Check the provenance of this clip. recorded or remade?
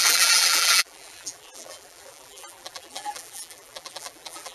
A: remade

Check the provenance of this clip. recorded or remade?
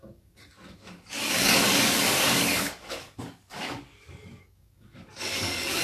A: remade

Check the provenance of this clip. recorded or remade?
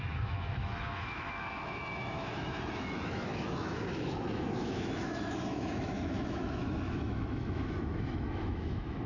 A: remade